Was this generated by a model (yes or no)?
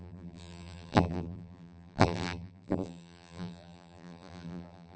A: yes